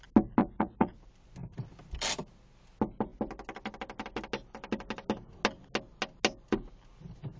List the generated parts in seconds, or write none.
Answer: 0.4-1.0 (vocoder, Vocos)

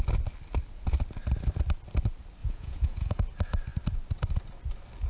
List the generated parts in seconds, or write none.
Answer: 2.4-3.3 (vocoder, Vocos)

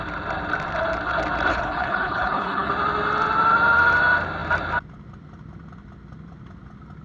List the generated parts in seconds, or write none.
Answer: 1.5-2.7 (codec, HILCodec)

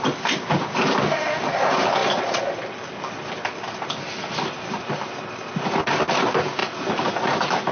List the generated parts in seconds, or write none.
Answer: none

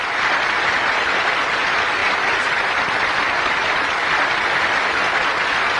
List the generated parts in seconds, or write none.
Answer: none

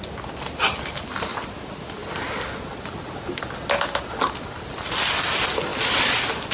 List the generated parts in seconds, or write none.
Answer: none

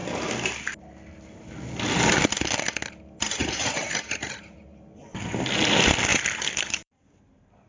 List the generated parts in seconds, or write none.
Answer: 3.4-5.2 (vocoder, BigVGAN v2); 6.1-6.9

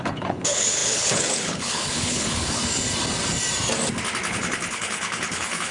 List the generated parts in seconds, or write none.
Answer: 0.0-2.6 (codec, HILCodec); 4.3-5.7